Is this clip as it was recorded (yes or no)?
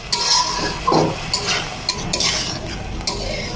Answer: yes